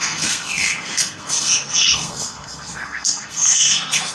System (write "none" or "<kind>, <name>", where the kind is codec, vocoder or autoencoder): codec, SNAC